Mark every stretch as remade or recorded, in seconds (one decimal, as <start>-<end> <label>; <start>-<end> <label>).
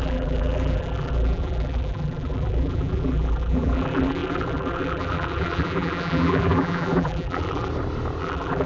0.0-7.7 remade; 7.7-8.2 recorded; 8.2-8.7 remade